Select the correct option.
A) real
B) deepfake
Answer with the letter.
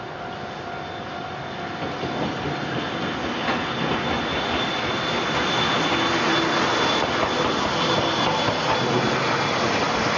A